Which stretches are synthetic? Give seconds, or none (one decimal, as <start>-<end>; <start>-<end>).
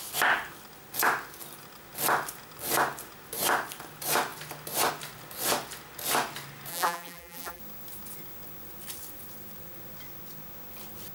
6.7-7.6